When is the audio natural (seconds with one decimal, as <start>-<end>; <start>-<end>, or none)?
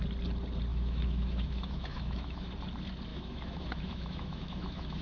0.0-0.7; 2.5-3.1